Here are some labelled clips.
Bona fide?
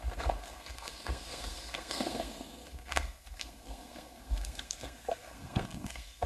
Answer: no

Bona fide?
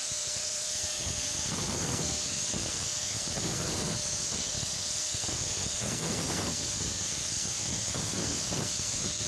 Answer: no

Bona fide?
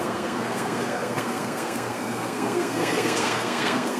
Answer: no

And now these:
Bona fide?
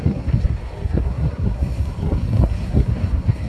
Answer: no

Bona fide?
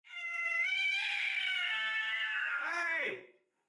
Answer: no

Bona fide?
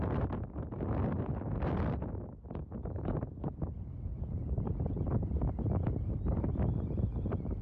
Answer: yes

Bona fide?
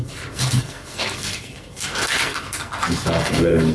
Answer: no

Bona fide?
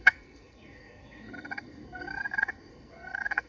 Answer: no